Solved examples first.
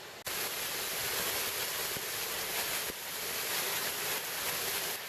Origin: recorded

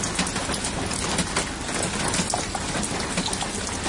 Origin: recorded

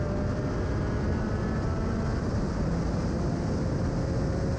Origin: recorded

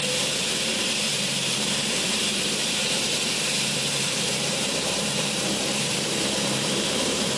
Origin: remade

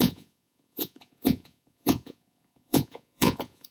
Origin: remade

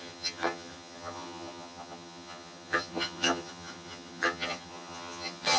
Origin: remade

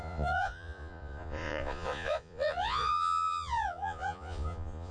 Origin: remade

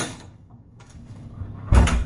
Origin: remade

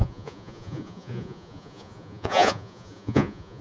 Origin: remade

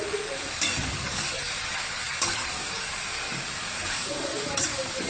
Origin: remade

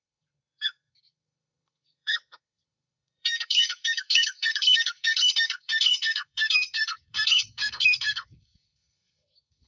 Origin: remade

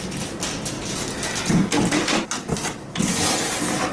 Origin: recorded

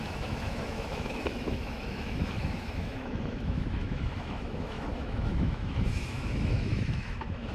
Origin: remade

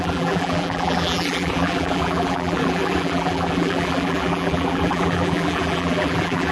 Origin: remade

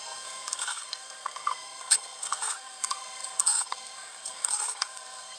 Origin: remade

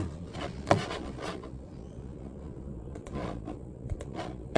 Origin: remade